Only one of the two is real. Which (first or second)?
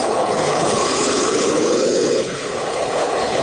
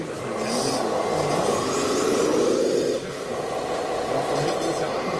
second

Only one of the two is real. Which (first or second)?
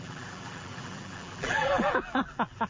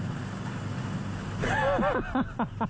second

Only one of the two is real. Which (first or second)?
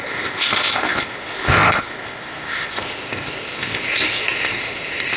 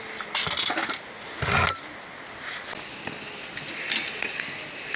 second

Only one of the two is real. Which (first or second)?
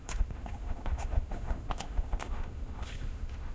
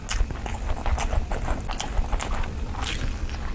second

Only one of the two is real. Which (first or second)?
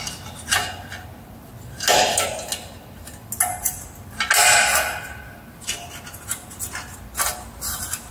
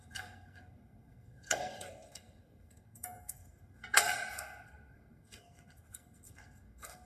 first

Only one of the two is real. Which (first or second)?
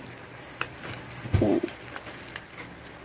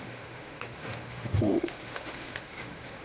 first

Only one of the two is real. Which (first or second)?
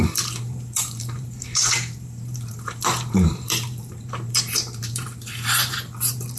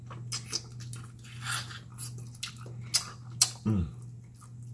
second